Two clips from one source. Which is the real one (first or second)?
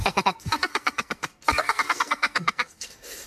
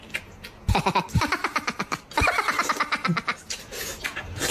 second